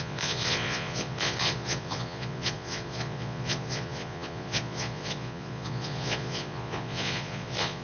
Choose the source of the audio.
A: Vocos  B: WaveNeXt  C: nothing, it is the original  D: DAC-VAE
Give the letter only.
A